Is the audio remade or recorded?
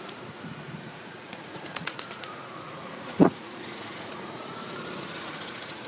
remade